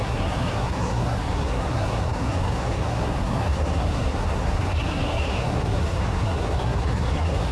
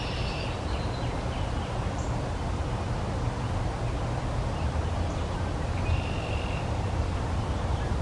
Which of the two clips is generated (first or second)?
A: first